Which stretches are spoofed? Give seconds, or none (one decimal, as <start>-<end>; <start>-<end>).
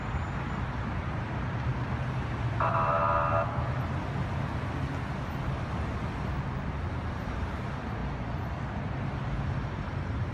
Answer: 0.0-1.7; 6.7-8.0; 9.7-10.3